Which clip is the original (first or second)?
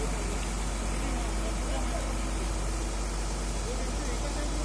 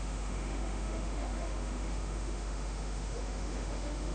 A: first